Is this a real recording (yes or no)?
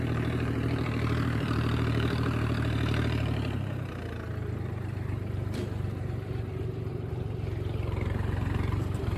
no